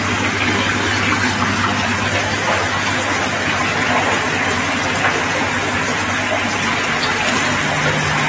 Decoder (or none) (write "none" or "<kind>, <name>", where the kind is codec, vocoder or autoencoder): none